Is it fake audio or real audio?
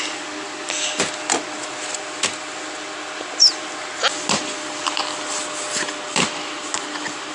real